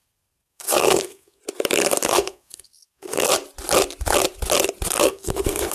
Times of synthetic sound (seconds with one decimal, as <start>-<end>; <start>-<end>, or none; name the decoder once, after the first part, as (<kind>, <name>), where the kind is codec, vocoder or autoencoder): 0.0-1.4 (codec, SNAC); 2.1-3.3; 5.0-5.7